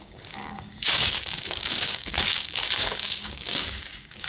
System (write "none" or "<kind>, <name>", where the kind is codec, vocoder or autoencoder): codec, DAC